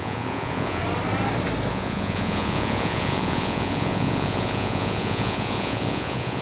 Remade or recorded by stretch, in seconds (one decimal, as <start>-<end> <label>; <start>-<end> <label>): 0.0-0.8 remade; 0.8-1.7 recorded; 1.7-6.4 remade